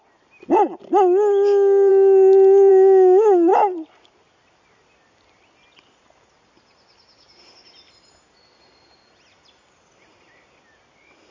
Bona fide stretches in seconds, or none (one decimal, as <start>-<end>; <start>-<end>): 0.0-11.3